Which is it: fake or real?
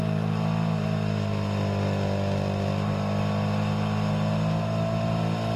real